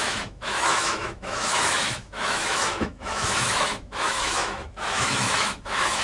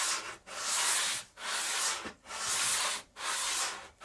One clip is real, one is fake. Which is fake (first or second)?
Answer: first